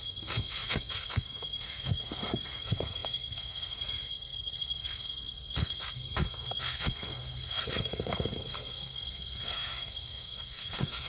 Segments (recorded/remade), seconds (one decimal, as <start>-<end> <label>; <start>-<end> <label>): 0.0-11.1 remade